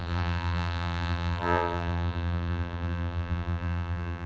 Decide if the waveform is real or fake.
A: fake